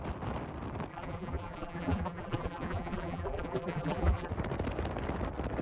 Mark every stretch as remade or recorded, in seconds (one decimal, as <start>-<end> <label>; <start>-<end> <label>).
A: 0.0-0.9 recorded; 0.9-4.3 remade; 4.3-5.6 recorded